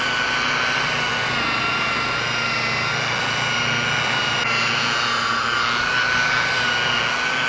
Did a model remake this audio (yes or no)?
no